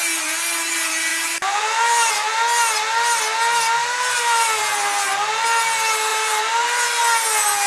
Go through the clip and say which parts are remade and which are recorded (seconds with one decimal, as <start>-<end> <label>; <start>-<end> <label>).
0.0-1.1 recorded; 1.1-2.1 remade; 2.1-3.8 recorded; 3.8-4.6 remade; 4.6-6.1 recorded; 6.1-7.0 remade; 7.0-7.7 recorded